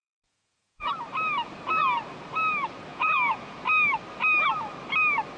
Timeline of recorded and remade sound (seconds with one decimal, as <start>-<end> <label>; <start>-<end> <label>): 0.0-0.9 remade; 0.9-2.9 recorded; 2.9-3.6 remade; 3.6-5.4 recorded